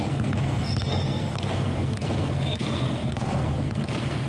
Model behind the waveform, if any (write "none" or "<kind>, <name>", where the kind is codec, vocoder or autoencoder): codec, SNAC